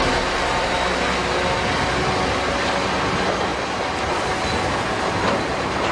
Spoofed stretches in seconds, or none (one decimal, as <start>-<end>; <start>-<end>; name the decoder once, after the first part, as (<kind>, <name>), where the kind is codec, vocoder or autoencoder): 3.5-4.2 (vocoder, BigVGAN v2)